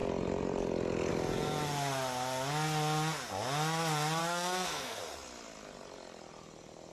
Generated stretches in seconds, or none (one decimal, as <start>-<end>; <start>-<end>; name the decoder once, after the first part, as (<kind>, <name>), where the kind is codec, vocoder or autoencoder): 4.2-5.0 (codec, SNAC)

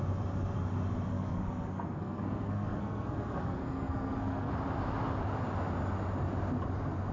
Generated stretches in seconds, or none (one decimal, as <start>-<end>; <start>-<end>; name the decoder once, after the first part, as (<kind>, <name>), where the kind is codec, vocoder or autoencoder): 1.1-4.5 (codec, SNAC)